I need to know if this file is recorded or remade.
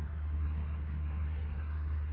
remade